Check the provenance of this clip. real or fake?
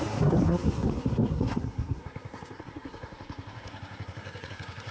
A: fake